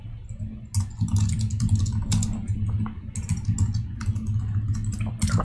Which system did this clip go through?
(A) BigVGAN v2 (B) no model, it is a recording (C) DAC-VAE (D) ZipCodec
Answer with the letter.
B